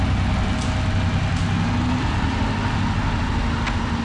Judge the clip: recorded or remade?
recorded